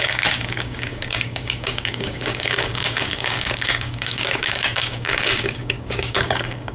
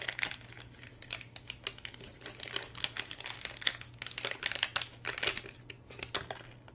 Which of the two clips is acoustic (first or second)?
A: second